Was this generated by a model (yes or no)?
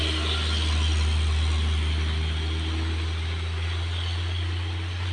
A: no